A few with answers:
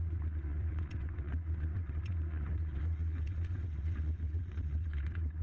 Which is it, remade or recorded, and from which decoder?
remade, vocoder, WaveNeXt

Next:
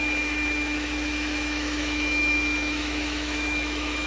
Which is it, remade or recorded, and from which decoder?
remade, autoencoder, DAC-VAE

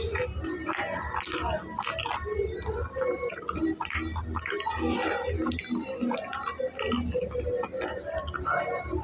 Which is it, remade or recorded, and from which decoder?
recorded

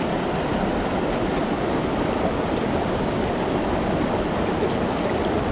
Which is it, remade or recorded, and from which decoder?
recorded